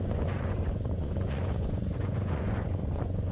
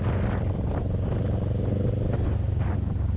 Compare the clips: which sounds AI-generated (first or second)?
first